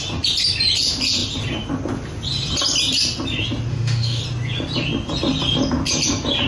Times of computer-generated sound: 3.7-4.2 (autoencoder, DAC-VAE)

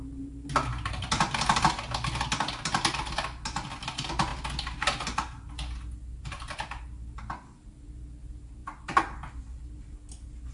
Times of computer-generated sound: none